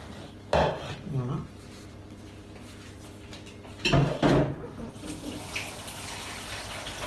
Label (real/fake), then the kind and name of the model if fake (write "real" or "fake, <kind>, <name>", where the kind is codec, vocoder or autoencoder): real